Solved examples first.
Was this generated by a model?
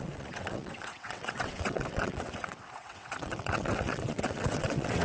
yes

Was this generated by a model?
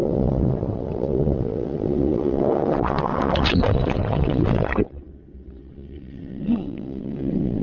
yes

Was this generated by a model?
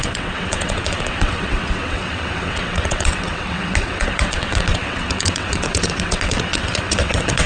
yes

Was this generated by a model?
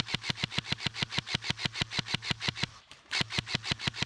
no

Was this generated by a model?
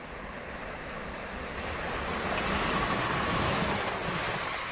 no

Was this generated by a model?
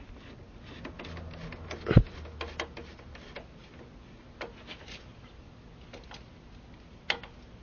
no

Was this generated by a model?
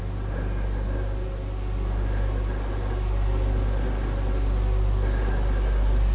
no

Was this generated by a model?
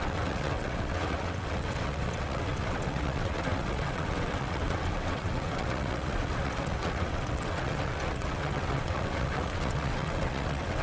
yes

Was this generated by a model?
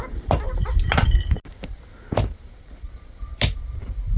no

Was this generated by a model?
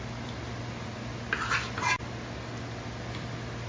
no